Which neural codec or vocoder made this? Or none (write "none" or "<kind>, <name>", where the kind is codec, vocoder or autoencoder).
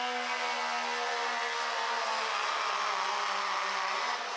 none